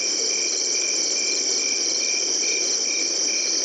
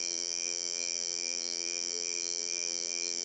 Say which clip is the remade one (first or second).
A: second